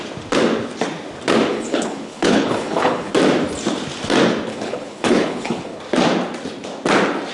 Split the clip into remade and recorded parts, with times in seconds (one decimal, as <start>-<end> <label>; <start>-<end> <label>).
0.0-1.5 recorded; 1.5-3.1 remade; 3.1-4.5 recorded; 4.5-5.8 remade; 5.8-7.3 recorded